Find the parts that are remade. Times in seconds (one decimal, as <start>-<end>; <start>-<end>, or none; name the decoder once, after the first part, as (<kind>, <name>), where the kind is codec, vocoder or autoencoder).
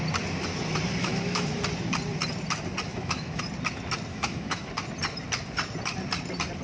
1.0-1.6 (autoencoder, DAC-VAE); 2.9-3.4; 4.1-4.7